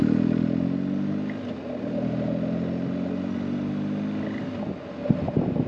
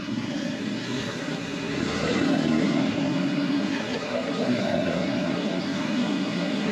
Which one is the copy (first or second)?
second